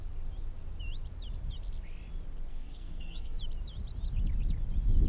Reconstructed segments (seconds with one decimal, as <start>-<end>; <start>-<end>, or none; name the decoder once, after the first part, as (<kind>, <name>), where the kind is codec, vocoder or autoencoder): 2.5-3.4 (codec, SNAC)